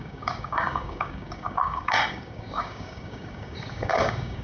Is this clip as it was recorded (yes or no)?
no